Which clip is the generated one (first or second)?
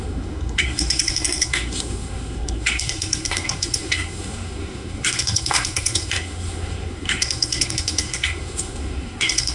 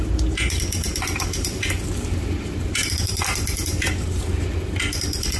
first